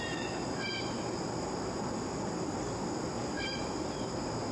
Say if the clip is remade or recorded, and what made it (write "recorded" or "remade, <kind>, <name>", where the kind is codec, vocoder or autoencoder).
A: recorded